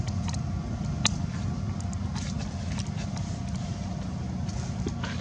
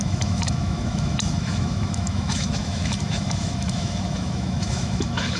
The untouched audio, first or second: first